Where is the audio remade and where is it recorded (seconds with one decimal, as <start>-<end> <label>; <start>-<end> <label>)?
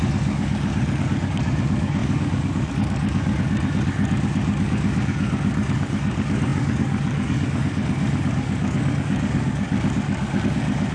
0.0-10.9 remade